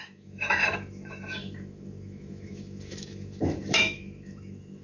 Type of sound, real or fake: fake